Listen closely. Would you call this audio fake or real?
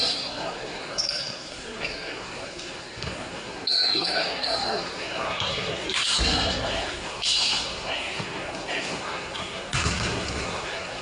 fake